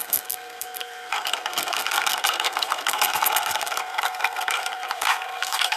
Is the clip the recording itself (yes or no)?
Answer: no